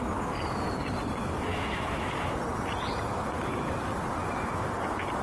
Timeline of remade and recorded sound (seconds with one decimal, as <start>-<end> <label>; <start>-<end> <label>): 0.0-1.5 recorded; 1.5-2.3 remade; 2.3-3.1 recorded; 3.1-3.7 remade; 3.7-4.2 recorded; 4.2-4.7 remade; 4.7-5.2 recorded